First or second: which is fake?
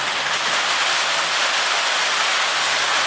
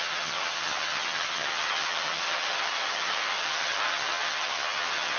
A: second